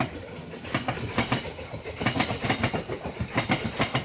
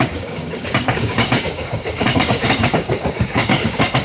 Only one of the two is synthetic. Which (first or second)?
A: second